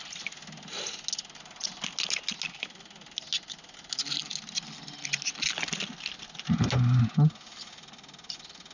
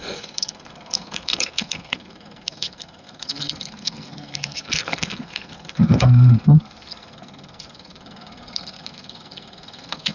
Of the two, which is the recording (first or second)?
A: first